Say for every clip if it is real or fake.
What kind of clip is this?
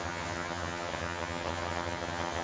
fake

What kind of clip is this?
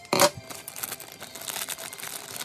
fake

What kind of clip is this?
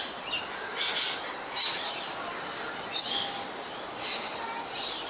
real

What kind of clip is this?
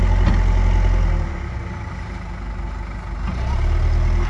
real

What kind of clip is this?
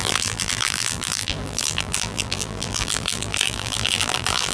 fake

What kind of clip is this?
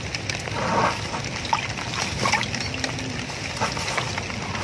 real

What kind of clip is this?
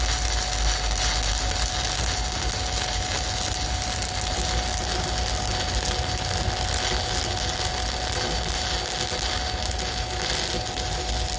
real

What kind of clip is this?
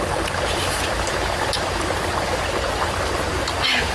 real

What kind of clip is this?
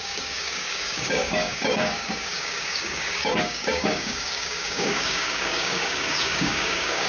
fake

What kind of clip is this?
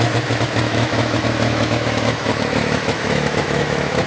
fake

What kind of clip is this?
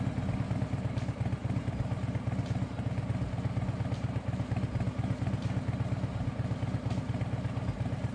real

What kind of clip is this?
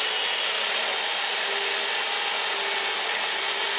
real